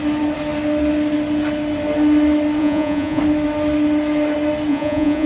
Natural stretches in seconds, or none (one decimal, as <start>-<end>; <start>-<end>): 0.0-2.6; 3.2-4.7